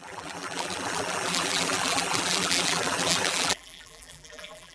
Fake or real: fake